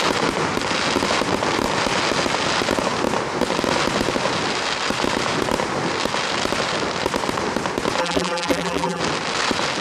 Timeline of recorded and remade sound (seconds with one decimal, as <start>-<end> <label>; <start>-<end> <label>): 0.0-8.0 recorded; 8.0-9.0 remade; 9.0-9.8 recorded